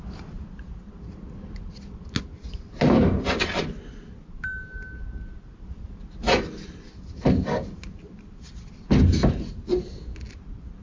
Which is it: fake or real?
real